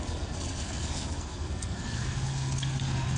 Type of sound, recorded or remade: remade